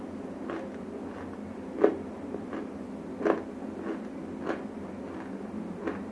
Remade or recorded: recorded